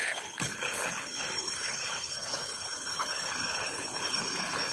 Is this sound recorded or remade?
remade